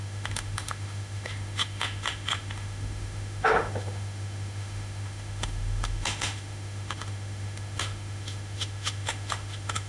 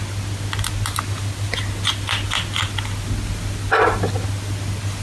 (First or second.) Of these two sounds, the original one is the second